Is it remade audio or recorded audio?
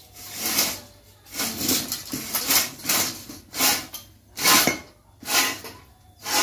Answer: recorded